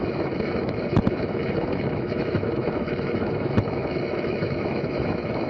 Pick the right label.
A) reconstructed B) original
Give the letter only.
A